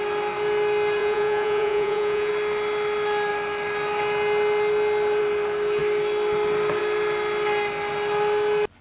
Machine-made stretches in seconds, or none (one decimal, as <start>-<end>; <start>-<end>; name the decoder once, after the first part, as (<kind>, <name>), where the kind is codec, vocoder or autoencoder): 1.0-2.3 (vocoder, Vocos)